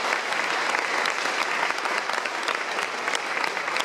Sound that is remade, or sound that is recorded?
recorded